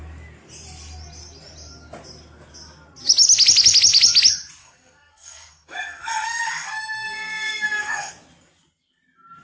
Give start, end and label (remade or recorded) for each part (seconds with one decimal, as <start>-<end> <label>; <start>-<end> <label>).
0.0-4.6 recorded; 4.6-8.1 remade; 8.1-9.4 recorded